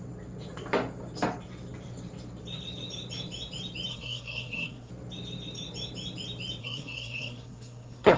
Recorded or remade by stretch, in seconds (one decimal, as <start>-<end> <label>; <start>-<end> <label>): 0.0-3.9 recorded; 3.9-4.9 remade; 4.9-6.6 recorded; 6.6-8.2 remade